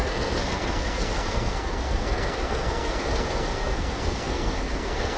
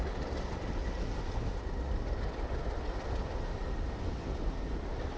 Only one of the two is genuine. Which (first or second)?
second